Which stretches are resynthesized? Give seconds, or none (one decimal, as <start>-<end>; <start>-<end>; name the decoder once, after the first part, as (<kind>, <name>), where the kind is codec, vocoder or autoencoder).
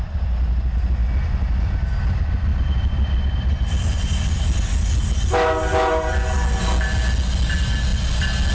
2.5-5.2 (vocoder, BigVGAN v2)